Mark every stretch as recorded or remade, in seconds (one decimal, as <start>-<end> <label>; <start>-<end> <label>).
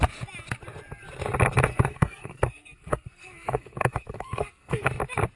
0.0-1.7 recorded; 1.7-4.9 remade; 4.9-5.4 recorded